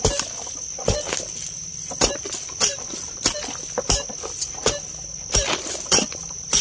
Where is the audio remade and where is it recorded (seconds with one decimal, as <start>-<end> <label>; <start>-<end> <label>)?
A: 0.0-6.6 recorded